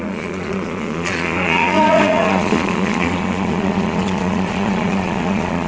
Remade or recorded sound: remade